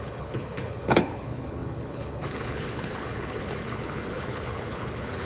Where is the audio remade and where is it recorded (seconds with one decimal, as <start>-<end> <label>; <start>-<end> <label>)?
0.0-5.3 remade